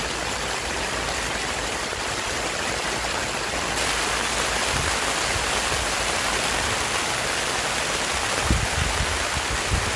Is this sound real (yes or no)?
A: yes